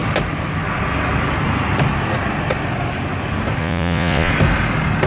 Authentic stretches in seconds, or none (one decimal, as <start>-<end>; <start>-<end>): 0.0-3.6; 4.3-5.1